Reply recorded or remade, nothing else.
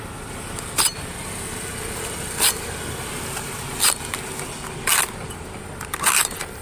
recorded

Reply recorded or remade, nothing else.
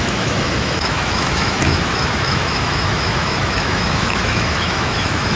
remade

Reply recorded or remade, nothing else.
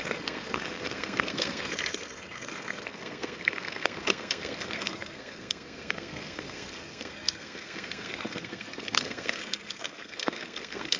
remade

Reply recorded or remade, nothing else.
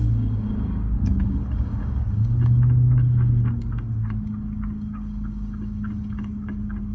remade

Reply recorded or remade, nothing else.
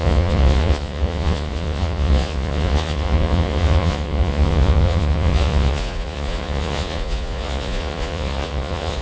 remade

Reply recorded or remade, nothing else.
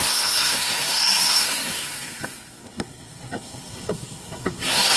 remade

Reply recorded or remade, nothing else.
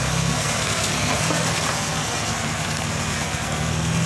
remade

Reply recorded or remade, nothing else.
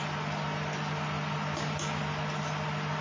recorded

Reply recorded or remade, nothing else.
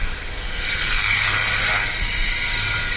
remade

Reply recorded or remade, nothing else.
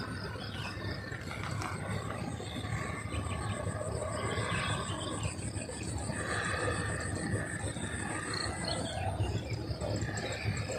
recorded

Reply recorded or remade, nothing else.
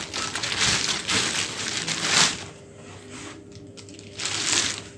recorded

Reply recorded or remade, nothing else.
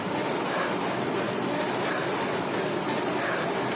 recorded